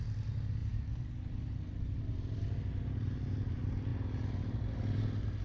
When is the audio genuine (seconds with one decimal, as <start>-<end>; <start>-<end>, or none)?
0.0-5.4